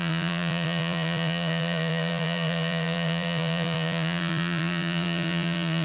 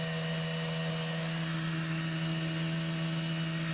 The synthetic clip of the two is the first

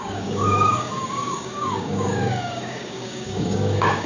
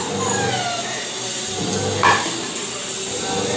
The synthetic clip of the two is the first